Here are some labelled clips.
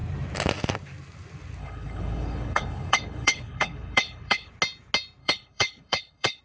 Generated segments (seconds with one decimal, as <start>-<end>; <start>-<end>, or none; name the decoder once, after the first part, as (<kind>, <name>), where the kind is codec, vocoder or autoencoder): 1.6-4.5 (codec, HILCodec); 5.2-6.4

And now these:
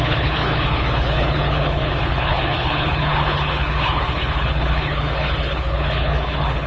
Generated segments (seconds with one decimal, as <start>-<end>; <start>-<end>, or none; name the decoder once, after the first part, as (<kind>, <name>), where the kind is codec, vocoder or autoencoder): 0.0-6.7 (codec, HILCodec)

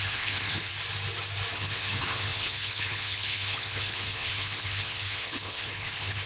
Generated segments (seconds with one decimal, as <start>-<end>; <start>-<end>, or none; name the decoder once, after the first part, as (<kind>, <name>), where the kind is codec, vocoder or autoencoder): 0.0-0.7 (codec, HILCodec); 1.5-6.3

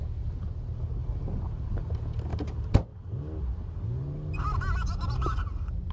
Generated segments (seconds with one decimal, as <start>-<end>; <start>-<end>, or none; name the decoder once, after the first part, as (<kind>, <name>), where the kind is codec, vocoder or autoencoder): none

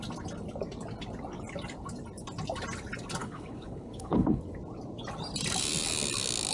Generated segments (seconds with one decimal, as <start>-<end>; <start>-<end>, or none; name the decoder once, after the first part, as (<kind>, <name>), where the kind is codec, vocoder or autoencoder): 3.2-4.4 (codec, HILCodec)

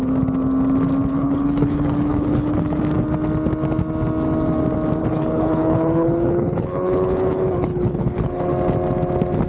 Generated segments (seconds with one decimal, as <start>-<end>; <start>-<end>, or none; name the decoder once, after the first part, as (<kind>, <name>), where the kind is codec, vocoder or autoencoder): 1.1-2.8 (codec, HILCodec); 5.0-8.5

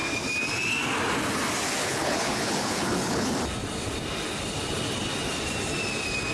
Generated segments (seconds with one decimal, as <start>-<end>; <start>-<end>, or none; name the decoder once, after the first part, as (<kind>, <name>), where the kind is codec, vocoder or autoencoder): 1.8-3.3 (codec, HILCodec)